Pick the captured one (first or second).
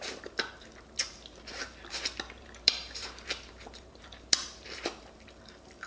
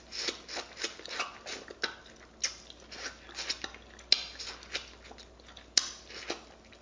second